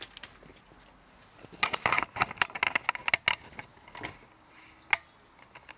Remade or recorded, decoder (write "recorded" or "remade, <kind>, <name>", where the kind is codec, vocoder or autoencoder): recorded